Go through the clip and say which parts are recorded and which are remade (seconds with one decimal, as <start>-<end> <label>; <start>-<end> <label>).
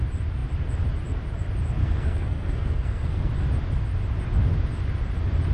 0.0-1.8 recorded; 1.8-3.3 remade; 3.3-5.5 recorded